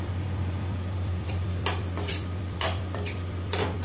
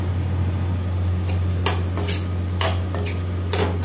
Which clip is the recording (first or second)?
second